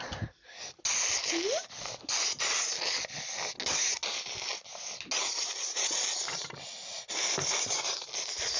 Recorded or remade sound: recorded